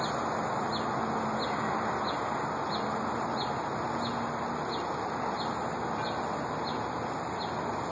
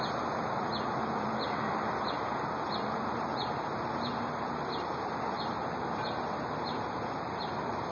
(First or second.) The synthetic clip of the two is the second